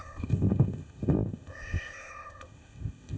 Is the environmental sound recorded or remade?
remade